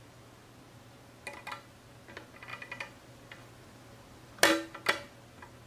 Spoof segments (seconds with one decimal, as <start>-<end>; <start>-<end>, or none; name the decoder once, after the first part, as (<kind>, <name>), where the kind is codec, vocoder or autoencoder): none